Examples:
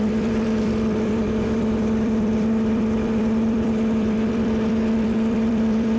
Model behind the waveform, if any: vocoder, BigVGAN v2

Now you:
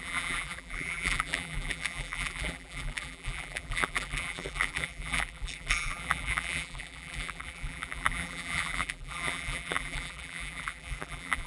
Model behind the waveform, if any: vocoder, BigVGAN v2